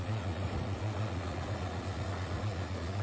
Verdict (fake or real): fake